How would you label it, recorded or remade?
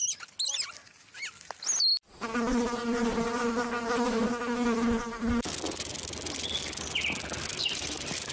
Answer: recorded